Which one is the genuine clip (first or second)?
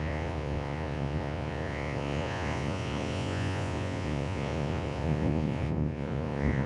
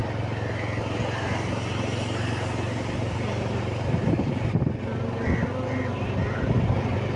second